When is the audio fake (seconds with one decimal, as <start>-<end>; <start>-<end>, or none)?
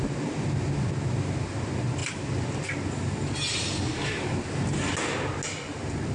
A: none